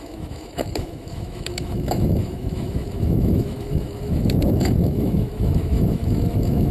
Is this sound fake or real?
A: fake